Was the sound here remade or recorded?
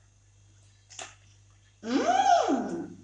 recorded